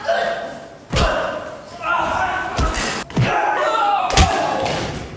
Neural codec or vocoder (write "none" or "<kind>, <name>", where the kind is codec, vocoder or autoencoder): none